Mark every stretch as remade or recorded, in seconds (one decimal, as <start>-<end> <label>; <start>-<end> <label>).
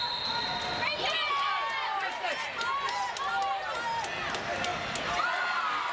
0.0-5.9 recorded